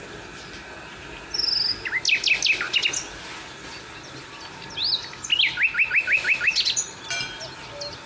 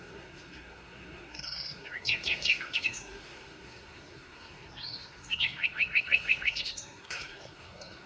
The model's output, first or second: second